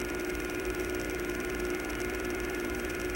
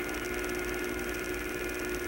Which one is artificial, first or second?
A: first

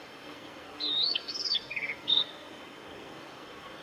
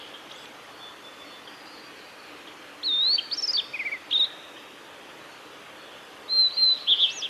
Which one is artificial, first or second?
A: first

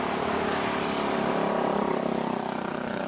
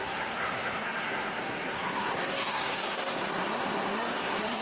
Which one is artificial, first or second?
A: second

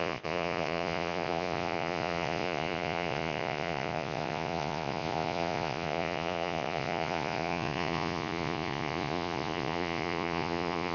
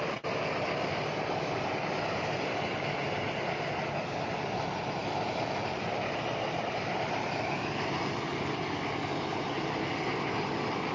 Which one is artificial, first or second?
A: first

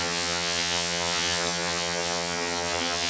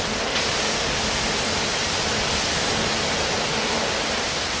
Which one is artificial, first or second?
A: first